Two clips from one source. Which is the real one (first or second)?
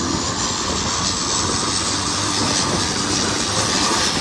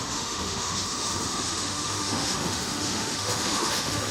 first